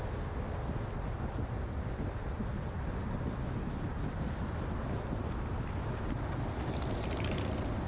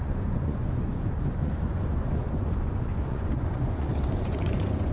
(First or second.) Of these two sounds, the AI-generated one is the second